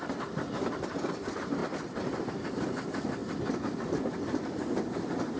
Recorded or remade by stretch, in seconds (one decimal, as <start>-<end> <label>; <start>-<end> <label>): 0.0-3.2 remade; 3.2-4.2 recorded; 4.2-5.4 remade